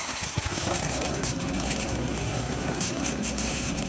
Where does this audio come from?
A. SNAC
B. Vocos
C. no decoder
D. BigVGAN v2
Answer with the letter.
A